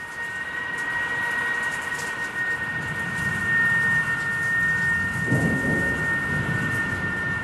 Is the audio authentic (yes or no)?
yes